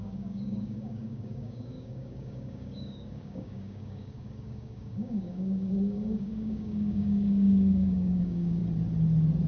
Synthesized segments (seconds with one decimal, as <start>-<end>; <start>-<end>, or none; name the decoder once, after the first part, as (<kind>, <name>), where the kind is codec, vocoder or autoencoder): 0.0-8.6 (codec, DAC)